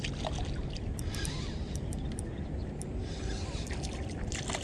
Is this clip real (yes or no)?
yes